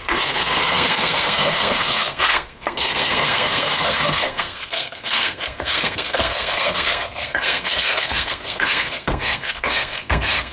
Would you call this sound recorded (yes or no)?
no